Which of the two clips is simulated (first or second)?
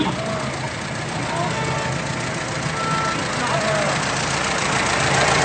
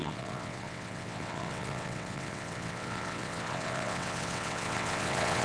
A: second